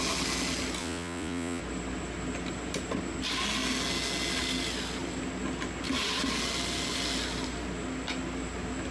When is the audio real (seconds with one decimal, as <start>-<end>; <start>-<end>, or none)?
0.0-0.8; 1.6-8.9